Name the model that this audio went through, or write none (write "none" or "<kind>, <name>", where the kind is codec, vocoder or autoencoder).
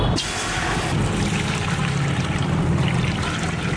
none